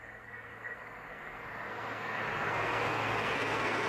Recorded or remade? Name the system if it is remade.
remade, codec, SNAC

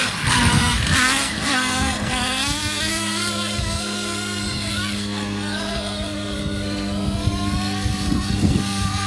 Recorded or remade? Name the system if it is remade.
remade, codec, SNAC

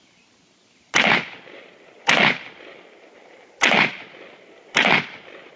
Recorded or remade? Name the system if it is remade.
recorded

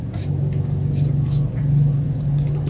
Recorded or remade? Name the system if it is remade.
recorded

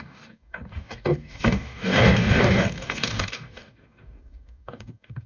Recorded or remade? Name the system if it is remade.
remade, codec, DAC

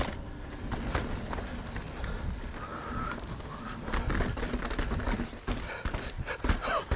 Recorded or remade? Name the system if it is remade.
recorded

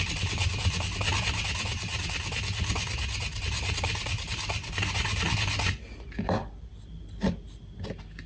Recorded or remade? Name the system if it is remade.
recorded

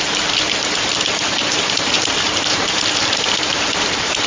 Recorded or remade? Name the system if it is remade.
remade, vocoder, BigVGAN v2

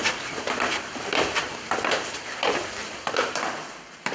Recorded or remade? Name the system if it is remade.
remade, vocoder, BigVGAN v2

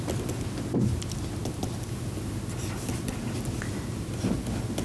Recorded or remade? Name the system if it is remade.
recorded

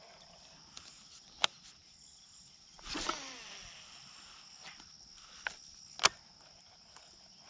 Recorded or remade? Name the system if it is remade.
recorded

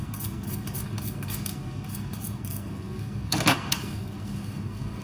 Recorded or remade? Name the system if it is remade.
remade, codec, SNAC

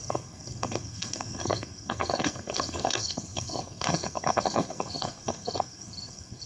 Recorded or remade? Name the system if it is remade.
remade, codec, SNAC